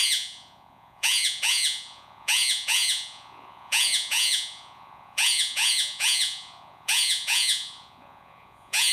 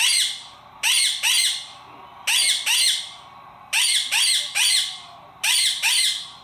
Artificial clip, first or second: first